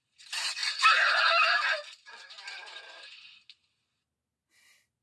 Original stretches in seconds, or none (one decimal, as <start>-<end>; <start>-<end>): 0.0-5.0